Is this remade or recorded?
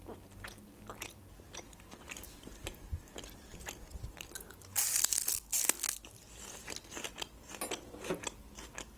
recorded